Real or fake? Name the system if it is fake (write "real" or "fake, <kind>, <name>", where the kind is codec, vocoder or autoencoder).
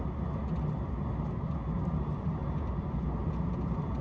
real